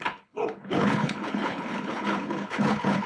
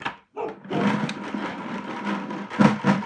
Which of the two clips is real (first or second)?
second